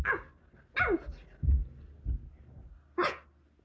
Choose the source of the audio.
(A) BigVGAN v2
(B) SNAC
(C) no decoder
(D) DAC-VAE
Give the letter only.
C